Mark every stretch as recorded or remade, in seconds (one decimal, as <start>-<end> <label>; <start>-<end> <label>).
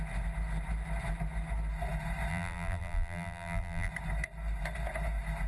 0.0-2.3 recorded; 2.3-3.9 remade; 3.9-5.5 recorded